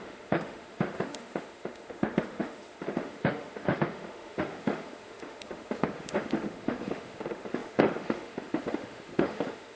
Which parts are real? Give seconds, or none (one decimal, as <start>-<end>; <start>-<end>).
none